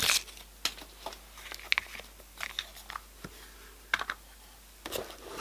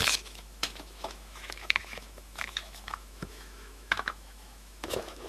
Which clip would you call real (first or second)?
first